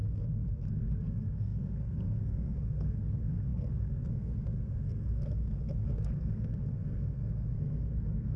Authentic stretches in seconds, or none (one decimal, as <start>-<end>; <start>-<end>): none